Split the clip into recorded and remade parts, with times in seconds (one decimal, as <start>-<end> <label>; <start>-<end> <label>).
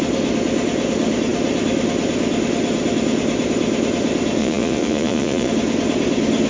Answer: 0.0-4.4 recorded; 4.4-5.5 remade; 5.5-6.5 recorded